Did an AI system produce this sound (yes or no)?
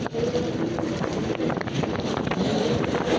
yes